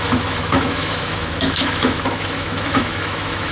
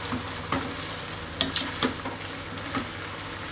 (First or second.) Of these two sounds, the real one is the second